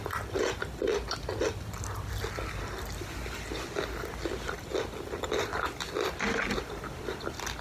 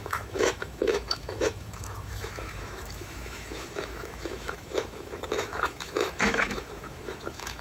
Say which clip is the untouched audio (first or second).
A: first